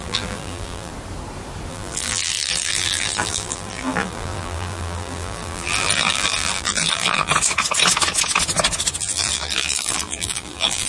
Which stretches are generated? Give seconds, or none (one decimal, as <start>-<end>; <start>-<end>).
0.0-0.9; 1.7-7.3; 9.0-10.9